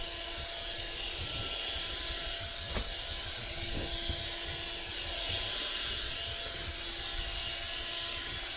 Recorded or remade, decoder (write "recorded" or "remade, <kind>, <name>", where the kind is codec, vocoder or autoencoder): recorded